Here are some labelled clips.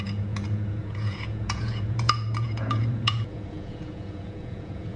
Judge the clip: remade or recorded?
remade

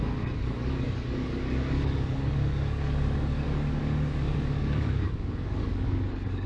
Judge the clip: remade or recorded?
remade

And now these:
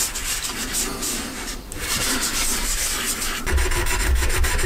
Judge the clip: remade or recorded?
recorded